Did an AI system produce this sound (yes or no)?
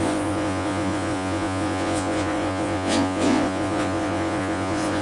yes